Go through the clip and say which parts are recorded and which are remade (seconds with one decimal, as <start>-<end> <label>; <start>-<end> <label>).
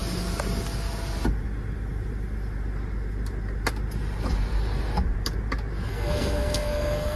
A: 0.0-5.9 recorded; 5.9-7.2 remade